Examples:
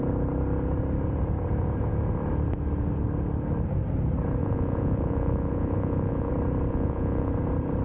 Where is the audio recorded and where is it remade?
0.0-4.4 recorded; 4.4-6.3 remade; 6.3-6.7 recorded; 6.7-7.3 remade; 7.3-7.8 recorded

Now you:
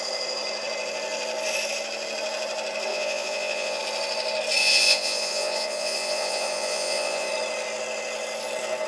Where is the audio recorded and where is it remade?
0.0-2.9 recorded; 2.9-3.8 remade; 3.8-4.6 recorded; 4.6-7.3 remade; 7.3-8.9 recorded

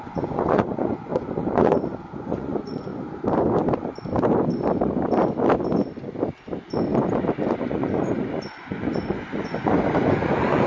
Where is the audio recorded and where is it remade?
0.0-2.9 remade; 2.9-7.6 recorded; 7.6-10.7 remade

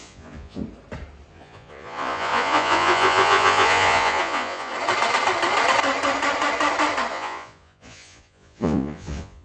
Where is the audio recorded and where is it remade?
0.0-0.6 remade; 0.6-1.3 recorded; 1.3-4.7 remade; 4.7-7.1 recorded; 7.1-9.4 remade

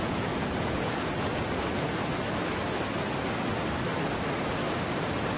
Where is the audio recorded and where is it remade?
0.0-1.1 remade; 1.1-5.4 recorded

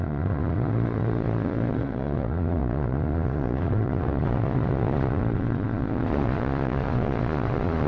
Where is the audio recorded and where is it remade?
0.0-7.9 remade

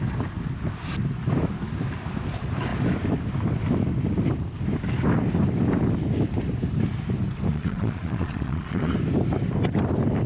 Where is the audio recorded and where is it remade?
0.0-7.5 recorded; 7.5-8.9 remade; 8.9-10.3 recorded

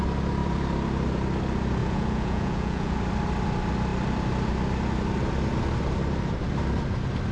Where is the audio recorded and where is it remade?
0.0-1.8 recorded; 1.8-3.0 remade; 3.0-7.3 recorded